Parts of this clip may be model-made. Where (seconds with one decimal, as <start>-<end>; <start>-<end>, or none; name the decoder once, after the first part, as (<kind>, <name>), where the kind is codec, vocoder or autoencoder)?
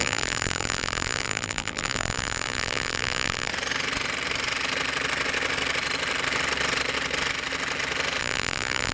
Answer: 0.0-3.5 (vocoder, BigVGAN v2); 8.2-8.9